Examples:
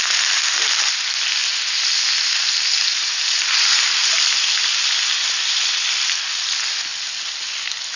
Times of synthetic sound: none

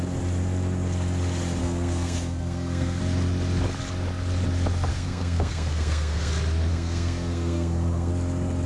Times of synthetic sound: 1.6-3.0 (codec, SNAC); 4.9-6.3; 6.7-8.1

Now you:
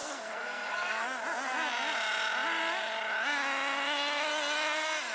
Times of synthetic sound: 0.0-1.0 (codec, SNAC)

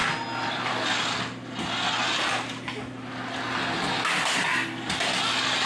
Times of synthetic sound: 4.6-5.2 (vocoder, BigVGAN v2)

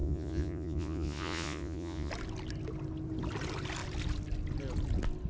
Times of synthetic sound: 0.0-2.1 (vocoder, Vocos)

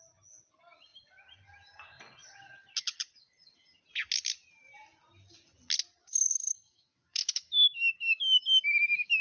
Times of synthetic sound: 6.0-9.2 (autoencoder, DAC-VAE)

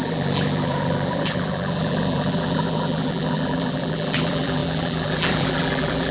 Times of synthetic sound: 0.0-6.1 (vocoder, BigVGAN v2)

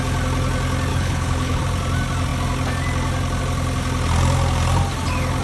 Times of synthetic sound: 0.9-1.6 (codec, HILCodec)